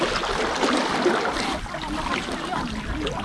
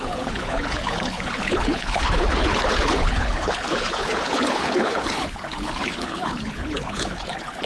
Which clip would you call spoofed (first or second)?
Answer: second